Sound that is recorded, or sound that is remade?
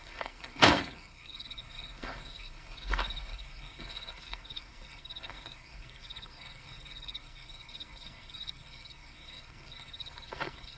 remade